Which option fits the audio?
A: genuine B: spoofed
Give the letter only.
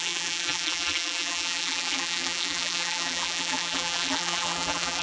B